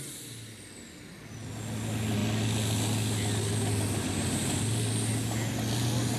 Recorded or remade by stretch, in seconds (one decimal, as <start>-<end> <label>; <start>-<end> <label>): 0.0-6.2 recorded